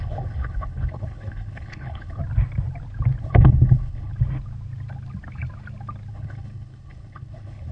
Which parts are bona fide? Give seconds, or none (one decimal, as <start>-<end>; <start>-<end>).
2.2-3.2; 4.1-6.1